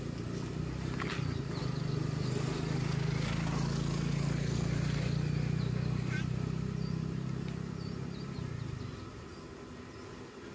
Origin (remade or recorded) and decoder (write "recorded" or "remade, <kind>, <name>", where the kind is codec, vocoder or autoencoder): recorded